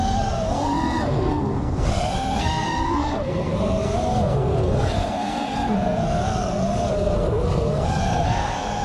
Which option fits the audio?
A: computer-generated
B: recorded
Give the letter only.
A